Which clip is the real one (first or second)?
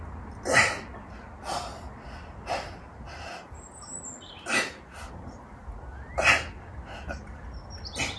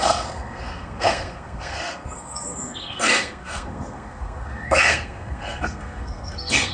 first